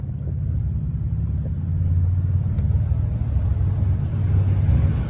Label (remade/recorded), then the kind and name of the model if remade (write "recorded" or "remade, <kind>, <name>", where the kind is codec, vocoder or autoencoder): recorded